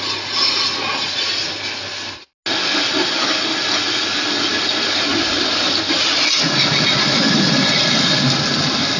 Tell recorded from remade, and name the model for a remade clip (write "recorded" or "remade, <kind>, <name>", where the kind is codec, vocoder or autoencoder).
recorded